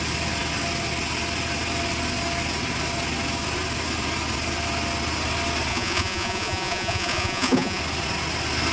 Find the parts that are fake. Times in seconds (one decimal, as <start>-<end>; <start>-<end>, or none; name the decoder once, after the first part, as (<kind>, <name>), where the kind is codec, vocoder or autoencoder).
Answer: 5.7-7.8 (vocoder, Vocos)